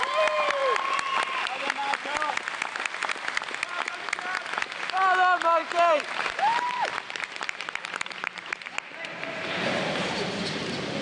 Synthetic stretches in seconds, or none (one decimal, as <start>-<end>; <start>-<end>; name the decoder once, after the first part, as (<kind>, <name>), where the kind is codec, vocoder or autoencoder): 5.6-10.3 (vocoder, BigVGAN v2)